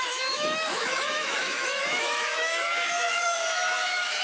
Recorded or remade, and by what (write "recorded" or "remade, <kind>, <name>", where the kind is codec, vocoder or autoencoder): remade, autoencoder, DAC-VAE